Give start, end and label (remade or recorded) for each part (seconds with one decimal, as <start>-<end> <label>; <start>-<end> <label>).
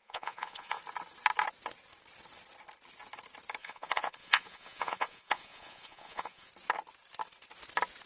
0.0-0.8 remade; 0.8-3.6 recorded; 3.6-6.5 remade; 6.5-8.1 recorded